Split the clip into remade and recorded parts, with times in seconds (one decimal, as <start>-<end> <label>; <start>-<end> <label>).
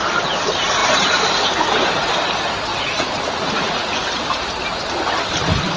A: 0.0-2.7 recorded; 2.7-3.9 remade; 3.9-5.8 recorded